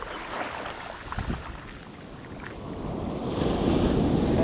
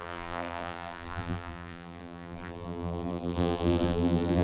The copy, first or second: second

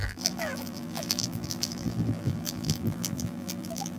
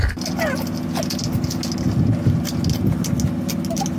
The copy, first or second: first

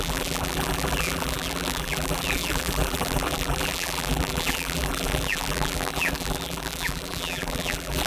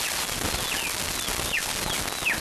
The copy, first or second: first